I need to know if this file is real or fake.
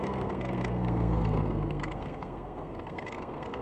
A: fake